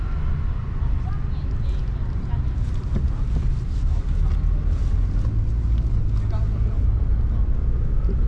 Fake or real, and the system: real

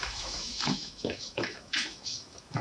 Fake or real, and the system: fake, autoencoder, DAC-VAE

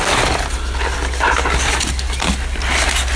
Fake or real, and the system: real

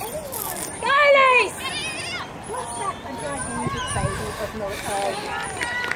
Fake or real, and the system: real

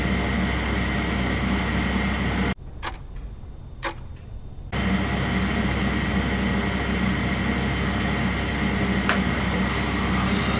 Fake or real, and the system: real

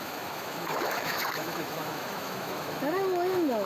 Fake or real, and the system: fake, autoencoder, DAC-VAE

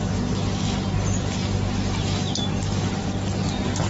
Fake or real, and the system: real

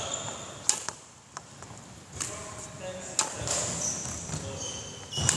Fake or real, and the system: real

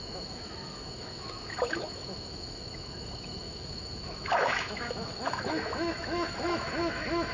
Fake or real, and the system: fake, autoencoder, DAC-VAE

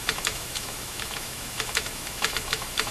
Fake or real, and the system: fake, autoencoder, DAC-VAE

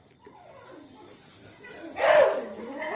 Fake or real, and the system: real